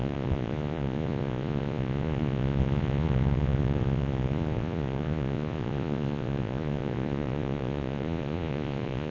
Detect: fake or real fake